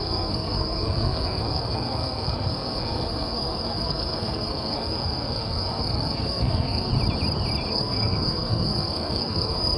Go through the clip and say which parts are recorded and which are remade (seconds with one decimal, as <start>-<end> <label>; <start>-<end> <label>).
0.0-6.9 remade; 6.9-7.7 recorded; 7.7-9.8 remade